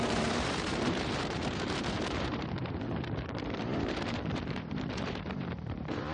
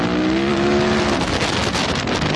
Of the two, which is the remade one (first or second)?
first